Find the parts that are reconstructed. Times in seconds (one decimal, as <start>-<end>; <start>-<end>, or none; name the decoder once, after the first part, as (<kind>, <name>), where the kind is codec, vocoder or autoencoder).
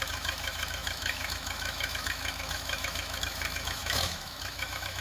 0.0-5.0 (autoencoder, DAC-VAE)